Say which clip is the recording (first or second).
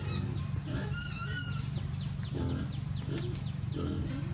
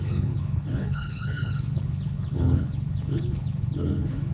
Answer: first